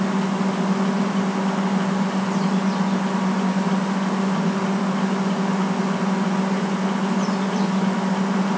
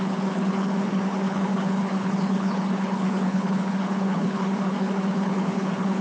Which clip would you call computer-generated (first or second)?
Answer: second